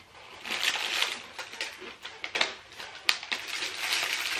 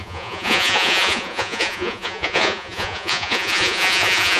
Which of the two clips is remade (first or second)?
second